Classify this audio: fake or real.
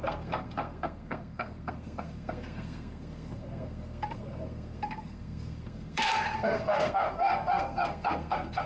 fake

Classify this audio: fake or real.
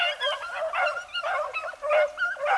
real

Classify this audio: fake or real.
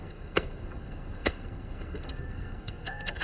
fake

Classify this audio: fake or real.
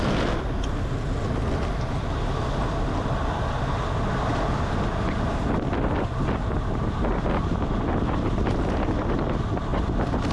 real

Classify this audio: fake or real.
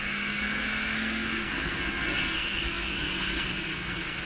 fake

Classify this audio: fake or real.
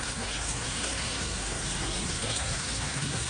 fake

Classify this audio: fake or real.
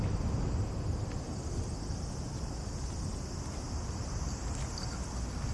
real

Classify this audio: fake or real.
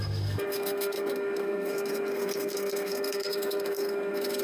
fake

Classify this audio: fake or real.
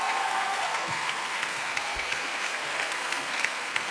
fake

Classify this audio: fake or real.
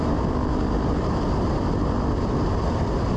real